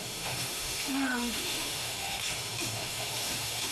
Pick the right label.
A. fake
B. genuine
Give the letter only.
A